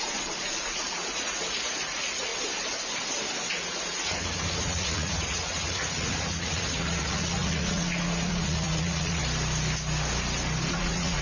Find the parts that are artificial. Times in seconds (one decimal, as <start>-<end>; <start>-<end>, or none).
0.0-2.3; 3.5-9.2; 10.7-11.2